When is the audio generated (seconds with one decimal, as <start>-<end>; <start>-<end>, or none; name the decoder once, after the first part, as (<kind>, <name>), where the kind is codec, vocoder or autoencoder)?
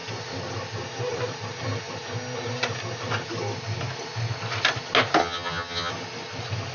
5.2-5.9 (vocoder, HiFi-GAN)